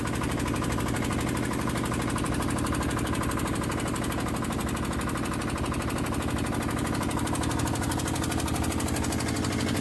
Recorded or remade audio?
recorded